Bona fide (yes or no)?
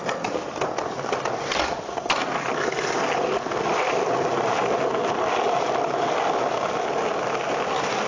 yes